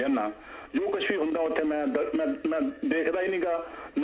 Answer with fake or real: fake